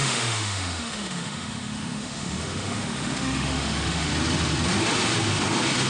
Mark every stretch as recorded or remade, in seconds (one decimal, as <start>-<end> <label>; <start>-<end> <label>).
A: 0.0-4.1 remade; 4.1-5.9 recorded